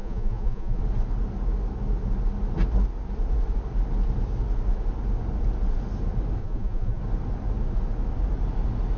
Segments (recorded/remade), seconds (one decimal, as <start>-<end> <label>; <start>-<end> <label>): 0.0-0.8 remade; 0.8-6.4 recorded; 6.4-7.0 remade; 7.0-9.0 recorded